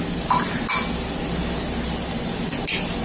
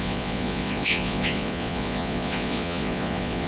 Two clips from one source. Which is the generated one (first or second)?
second